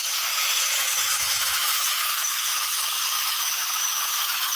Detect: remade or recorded remade